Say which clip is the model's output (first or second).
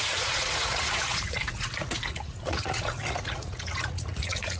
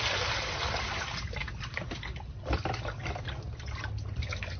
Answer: first